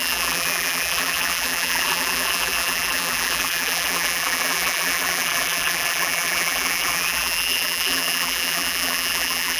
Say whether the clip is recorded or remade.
remade